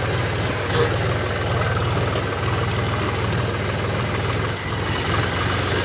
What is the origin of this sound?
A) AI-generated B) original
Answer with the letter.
B